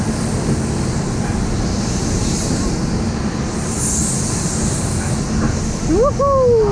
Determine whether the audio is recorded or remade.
recorded